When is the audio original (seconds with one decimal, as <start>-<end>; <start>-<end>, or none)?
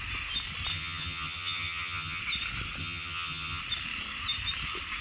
0.0-0.7; 2.2-2.8; 3.6-5.0